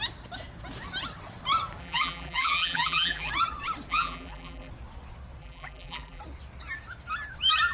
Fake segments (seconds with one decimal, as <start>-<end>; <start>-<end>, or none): 1.8-3.3; 3.9-4.7; 5.4-6.2